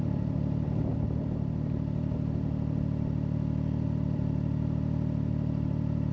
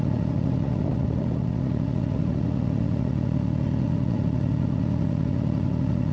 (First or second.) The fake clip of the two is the second